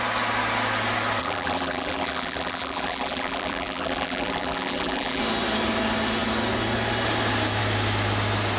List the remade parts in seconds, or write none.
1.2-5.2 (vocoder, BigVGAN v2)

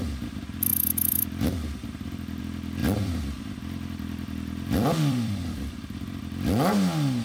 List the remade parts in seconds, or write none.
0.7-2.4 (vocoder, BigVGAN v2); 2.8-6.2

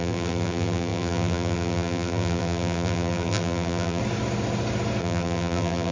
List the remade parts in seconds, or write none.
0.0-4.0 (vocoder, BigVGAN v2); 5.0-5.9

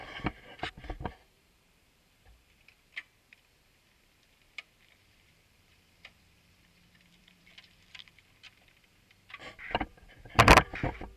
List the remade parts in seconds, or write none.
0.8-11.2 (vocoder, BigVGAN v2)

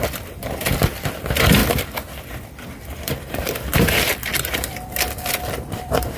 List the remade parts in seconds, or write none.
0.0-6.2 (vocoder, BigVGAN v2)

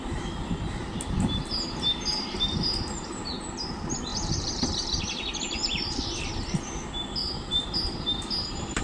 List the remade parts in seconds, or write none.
4.1-5.0 (vocoder, BigVGAN v2)